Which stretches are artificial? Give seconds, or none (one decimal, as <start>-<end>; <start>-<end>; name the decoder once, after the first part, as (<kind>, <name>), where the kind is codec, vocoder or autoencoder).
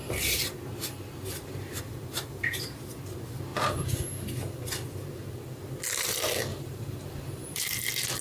0.0-1.8 (vocoder, BigVGAN v2); 6.5-7.6